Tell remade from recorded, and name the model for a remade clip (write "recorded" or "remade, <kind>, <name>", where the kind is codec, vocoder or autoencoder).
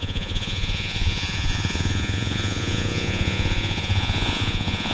remade, vocoder, Vocos